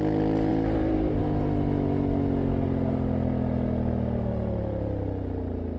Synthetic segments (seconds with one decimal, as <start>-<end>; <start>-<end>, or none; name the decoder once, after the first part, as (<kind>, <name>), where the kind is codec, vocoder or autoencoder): 0.5-1.2 (vocoder, BigVGAN v2)